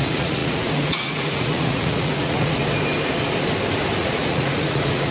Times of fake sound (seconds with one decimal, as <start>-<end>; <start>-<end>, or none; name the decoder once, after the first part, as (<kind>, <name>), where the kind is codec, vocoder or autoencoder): 0.0-2.6 (vocoder, Vocos); 4.0-5.1